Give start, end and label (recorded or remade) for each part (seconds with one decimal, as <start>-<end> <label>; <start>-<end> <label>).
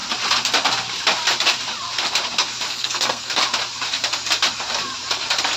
0.0-2.7 recorded; 2.7-3.4 remade; 3.4-5.6 recorded